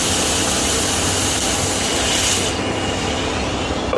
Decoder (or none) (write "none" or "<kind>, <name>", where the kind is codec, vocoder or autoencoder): none